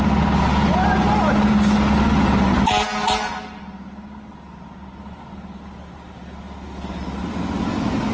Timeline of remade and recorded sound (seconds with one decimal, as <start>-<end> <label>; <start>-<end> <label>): 0.0-8.1 recorded

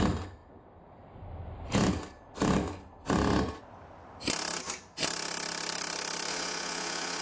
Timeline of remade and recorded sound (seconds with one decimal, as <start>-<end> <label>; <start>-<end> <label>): 0.0-6.3 recorded; 6.3-7.2 remade

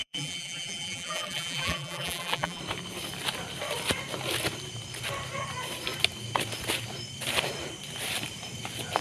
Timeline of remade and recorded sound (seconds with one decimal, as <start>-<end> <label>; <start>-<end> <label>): 0.0-2.6 remade; 2.6-9.0 recorded

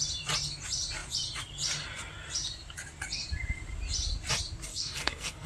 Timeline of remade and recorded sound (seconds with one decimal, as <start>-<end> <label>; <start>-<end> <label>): 0.0-4.7 recorded; 4.7-5.5 remade